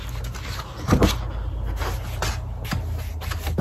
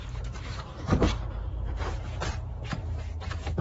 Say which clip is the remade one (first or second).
second